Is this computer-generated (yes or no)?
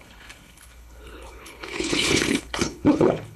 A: yes